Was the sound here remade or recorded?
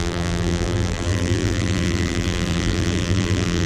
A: remade